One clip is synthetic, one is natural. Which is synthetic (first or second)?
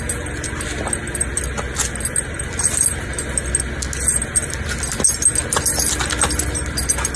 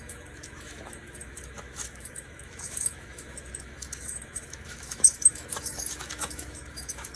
second